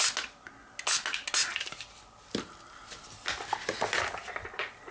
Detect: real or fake real